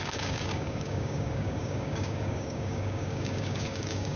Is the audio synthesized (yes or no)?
yes